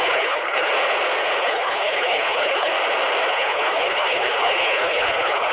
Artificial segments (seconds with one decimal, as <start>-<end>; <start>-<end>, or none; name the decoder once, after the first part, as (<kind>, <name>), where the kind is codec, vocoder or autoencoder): 0.0-0.7 (codec, HILCodec); 1.4-2.7; 3.3-5.5